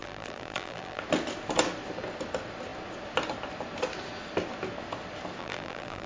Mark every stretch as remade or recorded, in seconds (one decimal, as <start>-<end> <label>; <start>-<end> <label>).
0.0-1.0 remade; 1.0-5.4 recorded; 5.4-6.1 remade